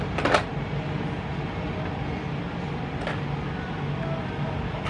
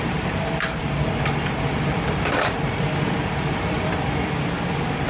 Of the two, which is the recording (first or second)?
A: first